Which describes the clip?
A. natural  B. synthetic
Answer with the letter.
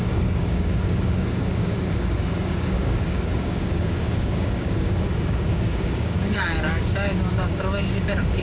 B